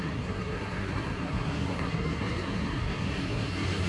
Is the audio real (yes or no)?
no